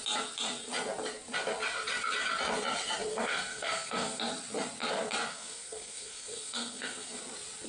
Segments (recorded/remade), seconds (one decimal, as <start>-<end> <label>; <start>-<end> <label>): 0.0-3.1 recorded; 3.1-4.2 remade; 4.2-5.3 recorded; 5.3-7.2 remade; 7.2-7.7 recorded